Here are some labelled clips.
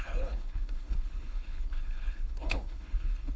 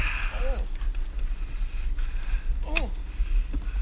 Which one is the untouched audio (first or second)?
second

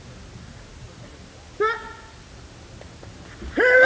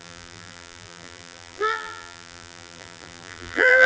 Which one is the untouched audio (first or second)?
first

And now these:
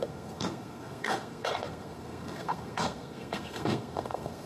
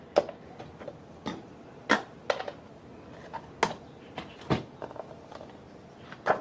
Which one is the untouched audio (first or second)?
second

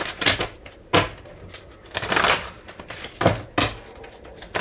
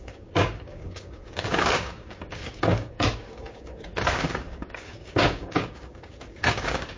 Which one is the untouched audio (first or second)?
first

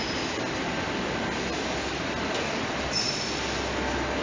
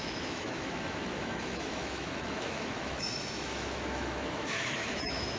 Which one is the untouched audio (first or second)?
first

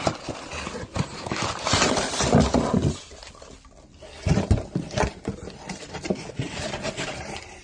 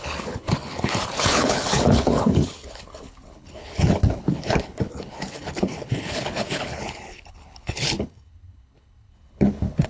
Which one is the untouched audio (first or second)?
first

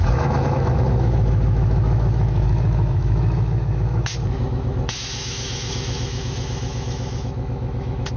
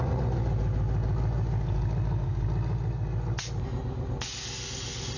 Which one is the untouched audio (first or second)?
second